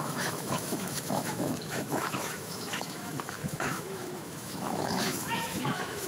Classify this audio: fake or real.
fake